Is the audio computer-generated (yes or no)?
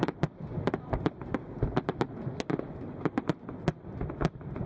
no